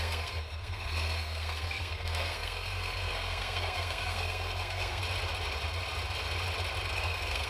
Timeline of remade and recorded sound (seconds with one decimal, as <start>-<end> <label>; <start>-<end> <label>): 0.0-5.0 remade; 5.0-6.9 recorded; 6.9-7.5 remade